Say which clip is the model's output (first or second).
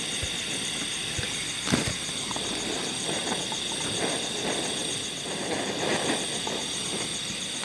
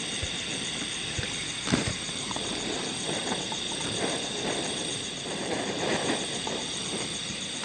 second